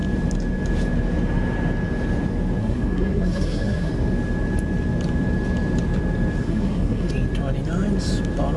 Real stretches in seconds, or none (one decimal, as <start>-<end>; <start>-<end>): 0.0-2.6; 3.9-6.4; 7.1-8.6

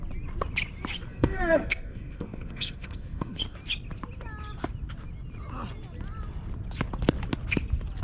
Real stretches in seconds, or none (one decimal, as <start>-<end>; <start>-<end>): 0.0-1.1; 3.4-8.0

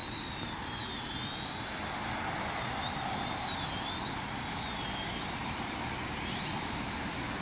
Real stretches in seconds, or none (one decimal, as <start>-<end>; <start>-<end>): 0.0-7.4

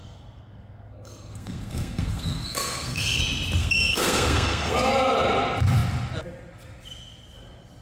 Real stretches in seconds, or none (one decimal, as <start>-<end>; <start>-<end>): 3.2-3.6; 4.9-7.8

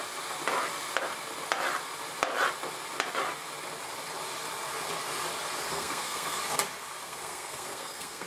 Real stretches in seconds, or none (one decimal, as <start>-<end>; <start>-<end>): 0.0-5.7; 6.4-7.0